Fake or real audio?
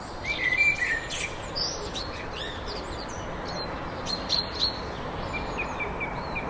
real